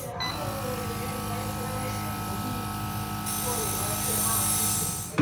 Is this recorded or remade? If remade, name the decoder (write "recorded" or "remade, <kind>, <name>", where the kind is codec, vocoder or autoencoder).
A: recorded